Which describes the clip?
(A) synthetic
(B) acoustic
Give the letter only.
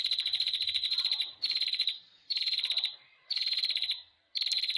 A